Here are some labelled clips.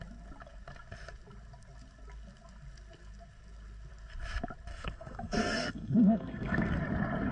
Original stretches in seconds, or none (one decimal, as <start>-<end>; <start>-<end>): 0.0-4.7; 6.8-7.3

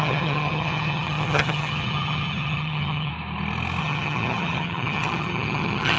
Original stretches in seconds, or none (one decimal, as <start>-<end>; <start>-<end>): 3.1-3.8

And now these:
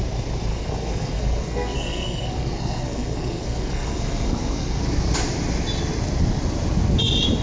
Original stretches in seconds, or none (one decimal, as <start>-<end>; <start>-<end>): 0.0-0.5; 4.8-7.4